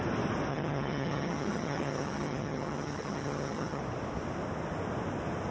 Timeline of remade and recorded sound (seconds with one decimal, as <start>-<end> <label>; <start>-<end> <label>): 0.0-0.5 recorded; 0.5-3.8 remade; 3.8-5.5 recorded

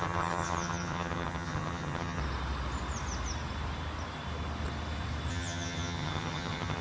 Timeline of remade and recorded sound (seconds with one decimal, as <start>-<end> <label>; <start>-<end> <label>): 0.0-2.2 remade; 2.2-5.3 recorded; 5.3-6.8 remade

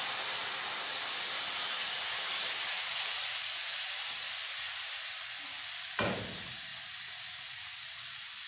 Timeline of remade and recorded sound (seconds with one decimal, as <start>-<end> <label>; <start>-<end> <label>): 0.0-8.5 recorded

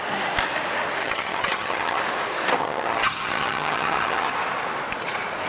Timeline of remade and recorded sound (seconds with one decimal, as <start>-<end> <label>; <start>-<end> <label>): 0.0-1.0 recorded; 1.0-2.0 remade; 2.0-2.6 recorded; 2.6-4.3 remade; 4.3-5.5 recorded